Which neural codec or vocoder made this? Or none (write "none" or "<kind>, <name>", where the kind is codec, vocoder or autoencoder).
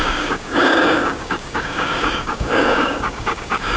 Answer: codec, DAC